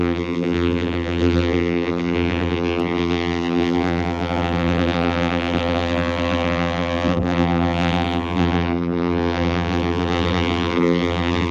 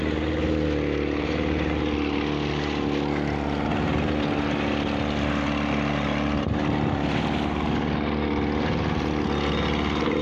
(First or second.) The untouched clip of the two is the second